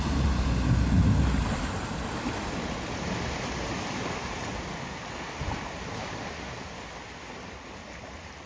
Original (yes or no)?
yes